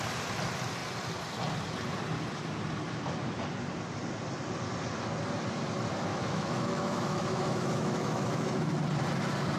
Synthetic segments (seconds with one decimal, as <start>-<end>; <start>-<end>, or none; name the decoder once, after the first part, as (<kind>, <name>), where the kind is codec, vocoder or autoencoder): 6.1-8.7 (autoencoder, DAC-VAE)